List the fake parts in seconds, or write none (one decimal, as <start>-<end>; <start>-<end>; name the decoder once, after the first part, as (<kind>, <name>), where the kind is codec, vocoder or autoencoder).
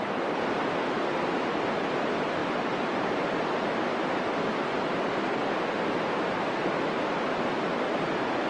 2.4-3.1 (vocoder, BigVGAN v2)